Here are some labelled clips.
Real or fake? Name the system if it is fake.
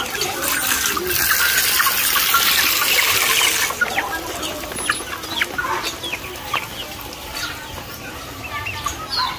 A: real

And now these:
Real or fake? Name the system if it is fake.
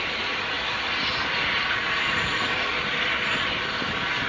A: real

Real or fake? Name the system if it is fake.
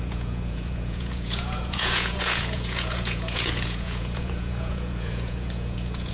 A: fake, vocoder, Vocos